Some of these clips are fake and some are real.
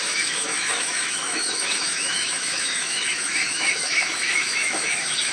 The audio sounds fake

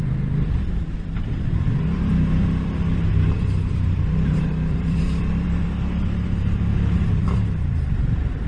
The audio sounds fake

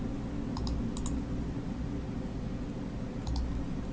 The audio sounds real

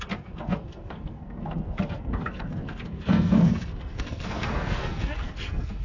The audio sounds fake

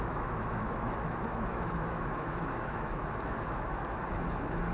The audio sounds fake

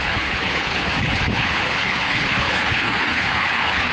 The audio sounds fake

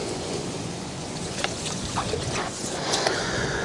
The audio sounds fake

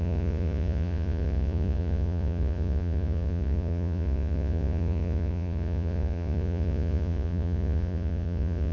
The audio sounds fake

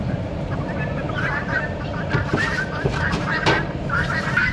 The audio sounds fake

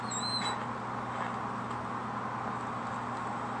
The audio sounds real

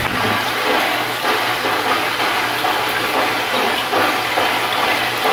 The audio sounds real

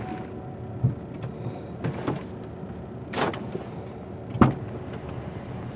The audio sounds real